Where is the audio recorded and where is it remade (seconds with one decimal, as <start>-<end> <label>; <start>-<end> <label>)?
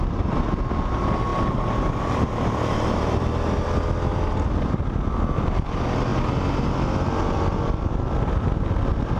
0.0-9.2 recorded